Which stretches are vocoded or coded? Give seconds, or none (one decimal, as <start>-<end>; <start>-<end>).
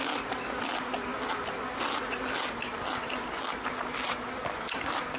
none